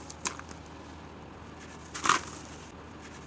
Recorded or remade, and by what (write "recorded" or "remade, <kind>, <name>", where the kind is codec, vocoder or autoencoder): recorded